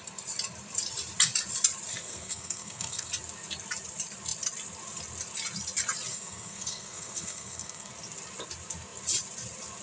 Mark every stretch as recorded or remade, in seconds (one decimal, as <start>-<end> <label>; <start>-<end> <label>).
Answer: 0.0-1.9 recorded; 1.9-3.1 remade; 3.1-6.1 recorded; 6.1-7.9 remade; 7.9-9.8 recorded